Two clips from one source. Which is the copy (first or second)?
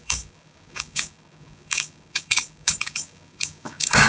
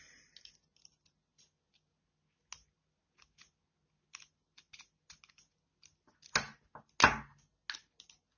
first